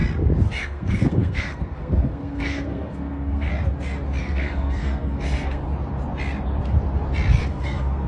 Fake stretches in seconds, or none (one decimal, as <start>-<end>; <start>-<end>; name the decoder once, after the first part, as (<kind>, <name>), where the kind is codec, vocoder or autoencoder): 0.6-3.5 (codec, SNAC); 4.2-5.6; 7.4-8.1